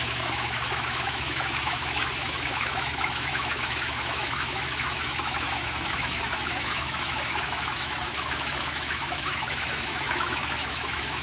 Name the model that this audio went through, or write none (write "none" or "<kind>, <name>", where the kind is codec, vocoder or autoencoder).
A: autoencoder, DAC-VAE